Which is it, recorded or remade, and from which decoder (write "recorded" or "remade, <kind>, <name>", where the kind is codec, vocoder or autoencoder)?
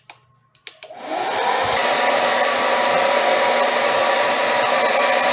recorded